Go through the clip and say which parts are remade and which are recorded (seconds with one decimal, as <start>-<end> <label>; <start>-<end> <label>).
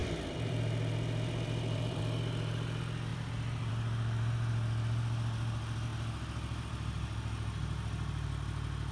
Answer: 0.0-2.0 remade; 2.0-3.1 recorded; 3.1-3.7 remade; 3.7-8.9 recorded